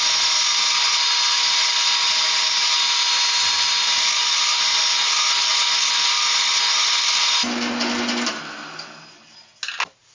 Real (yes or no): yes